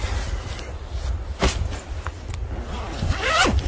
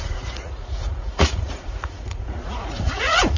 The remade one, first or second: second